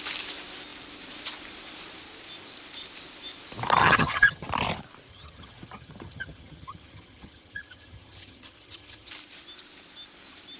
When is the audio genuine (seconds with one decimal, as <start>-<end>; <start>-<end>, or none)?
0.0-3.8; 4.5-5.1; 9.1-10.6